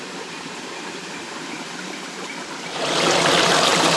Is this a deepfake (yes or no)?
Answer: no